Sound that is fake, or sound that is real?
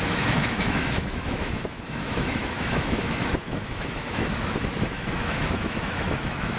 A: fake